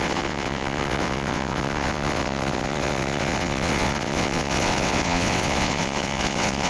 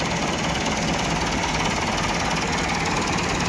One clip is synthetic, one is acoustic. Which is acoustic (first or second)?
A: second